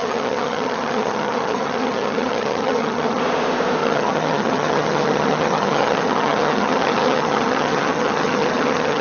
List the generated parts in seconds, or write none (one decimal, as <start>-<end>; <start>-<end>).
0.0-3.2; 3.8-9.0